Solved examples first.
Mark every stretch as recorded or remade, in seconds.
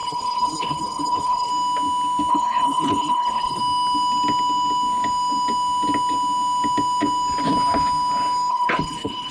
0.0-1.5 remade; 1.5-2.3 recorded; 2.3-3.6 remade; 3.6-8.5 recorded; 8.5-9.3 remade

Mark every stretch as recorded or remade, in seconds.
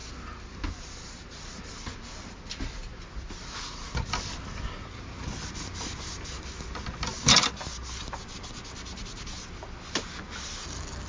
0.0-11.1 recorded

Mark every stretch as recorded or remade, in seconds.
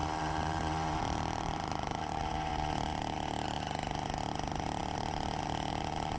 0.0-2.5 remade; 2.5-6.2 recorded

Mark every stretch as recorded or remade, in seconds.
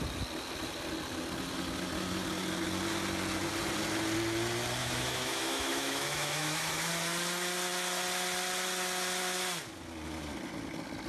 0.0-4.8 recorded; 4.8-6.9 remade; 6.9-11.1 recorded